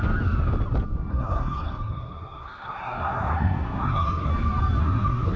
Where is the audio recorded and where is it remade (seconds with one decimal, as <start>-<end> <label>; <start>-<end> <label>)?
0.0-1.1 recorded; 1.1-4.3 remade; 4.3-4.8 recorded; 4.8-5.4 remade

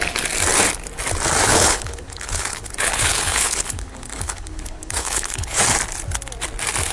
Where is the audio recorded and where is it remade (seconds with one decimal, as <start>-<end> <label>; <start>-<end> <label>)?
0.0-1.5 recorded; 1.5-5.6 remade; 5.6-6.9 recorded

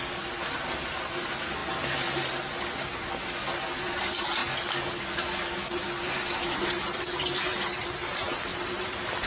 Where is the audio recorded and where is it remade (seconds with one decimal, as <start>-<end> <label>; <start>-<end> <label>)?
0.0-8.5 recorded; 8.5-9.3 remade